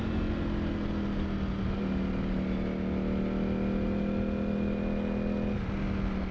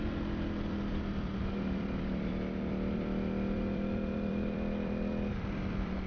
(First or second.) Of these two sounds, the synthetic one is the second